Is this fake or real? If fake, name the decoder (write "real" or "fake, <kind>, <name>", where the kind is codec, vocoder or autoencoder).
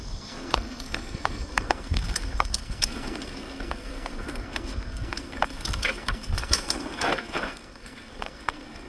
fake, codec, SNAC